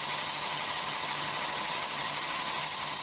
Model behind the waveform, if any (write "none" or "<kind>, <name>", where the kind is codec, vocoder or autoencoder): vocoder, HiFi-GAN